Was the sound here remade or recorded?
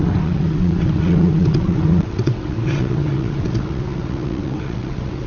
remade